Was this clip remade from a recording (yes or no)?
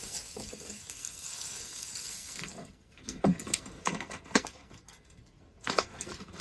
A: yes